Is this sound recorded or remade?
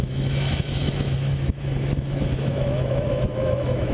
remade